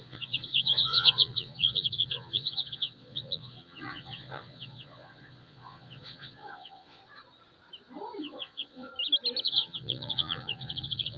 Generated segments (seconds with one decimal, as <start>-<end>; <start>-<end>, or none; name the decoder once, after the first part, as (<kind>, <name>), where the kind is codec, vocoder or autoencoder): 0.0-7.0 (vocoder, Vocos); 8.2-8.9; 9.4-11.2